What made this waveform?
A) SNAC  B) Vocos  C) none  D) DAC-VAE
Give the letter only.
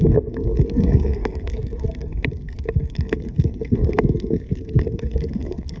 A